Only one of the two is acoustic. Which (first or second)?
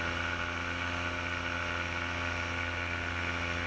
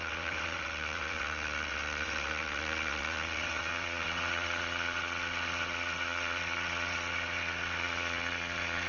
first